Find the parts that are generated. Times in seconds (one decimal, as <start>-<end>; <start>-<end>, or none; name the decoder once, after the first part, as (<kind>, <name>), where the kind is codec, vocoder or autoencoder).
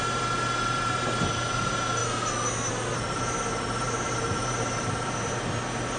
0.0-2.0 (vocoder, BigVGAN v2); 2.7-6.0